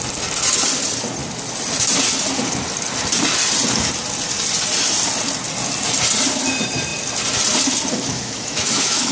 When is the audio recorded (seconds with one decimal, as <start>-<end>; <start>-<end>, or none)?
0.0-8.1